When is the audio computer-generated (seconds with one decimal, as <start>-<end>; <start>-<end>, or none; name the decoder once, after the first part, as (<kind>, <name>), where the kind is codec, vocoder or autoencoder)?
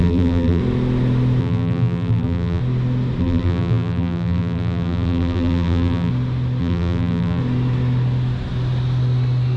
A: 0.0-0.6 (vocoder, BigVGAN v2); 1.4-2.6; 3.2-6.1; 6.6-7.4